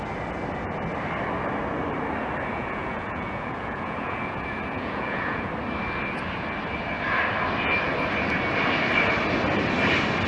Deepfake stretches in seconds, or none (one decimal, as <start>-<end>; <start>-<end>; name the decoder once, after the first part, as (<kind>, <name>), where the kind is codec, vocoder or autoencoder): 2.5-5.5 (vocoder, Vocos)